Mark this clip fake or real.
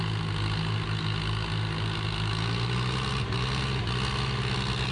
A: real